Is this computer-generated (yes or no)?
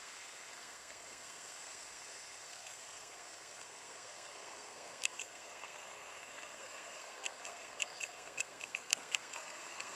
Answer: yes